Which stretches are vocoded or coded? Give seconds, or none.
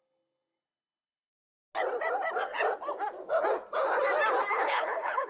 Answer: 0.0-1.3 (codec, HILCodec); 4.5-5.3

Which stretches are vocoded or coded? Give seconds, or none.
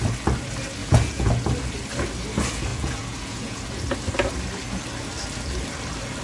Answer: 0.8-1.3 (vocoder, Vocos); 2.7-3.7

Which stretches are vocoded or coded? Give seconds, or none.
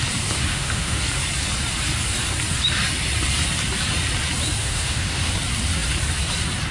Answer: 0.5-1.0 (autoencoder, DAC-VAE); 4.6-5.3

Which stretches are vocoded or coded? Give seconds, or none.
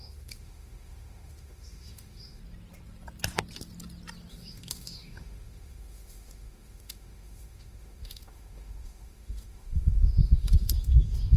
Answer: 0.0-2.4 (autoencoder, DAC-VAE); 4.3-11.4